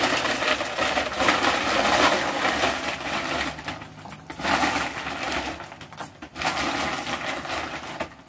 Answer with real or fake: real